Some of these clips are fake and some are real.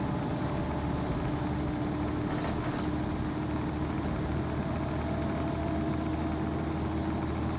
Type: real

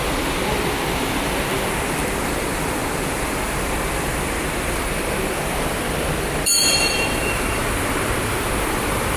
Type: fake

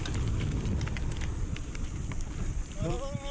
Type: real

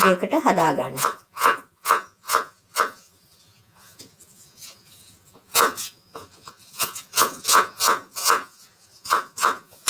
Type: fake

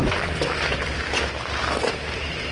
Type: real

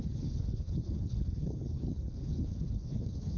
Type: fake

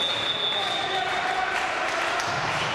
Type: real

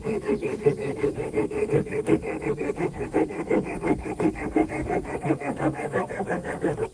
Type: fake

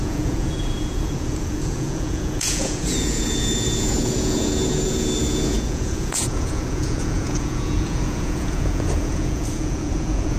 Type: fake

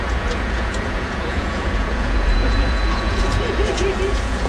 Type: fake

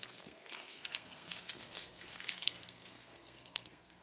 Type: fake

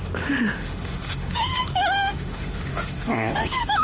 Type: fake